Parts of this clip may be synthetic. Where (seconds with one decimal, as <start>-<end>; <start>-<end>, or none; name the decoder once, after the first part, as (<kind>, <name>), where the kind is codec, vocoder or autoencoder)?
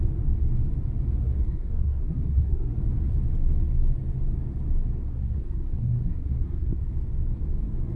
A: 1.2-2.7 (codec, SNAC); 5.0-6.9